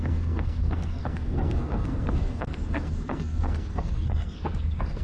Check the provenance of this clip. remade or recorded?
remade